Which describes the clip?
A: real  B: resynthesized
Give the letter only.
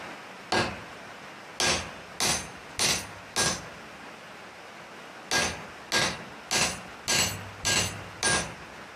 A